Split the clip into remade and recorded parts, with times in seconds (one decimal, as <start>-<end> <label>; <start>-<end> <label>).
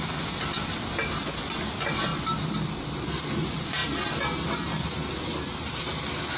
0.0-6.4 recorded